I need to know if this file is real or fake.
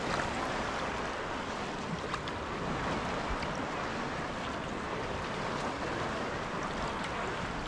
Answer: real